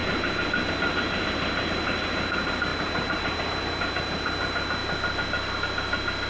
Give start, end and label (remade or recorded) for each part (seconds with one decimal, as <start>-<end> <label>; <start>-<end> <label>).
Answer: 0.0-0.7 recorded; 0.7-4.8 remade; 4.8-6.3 recorded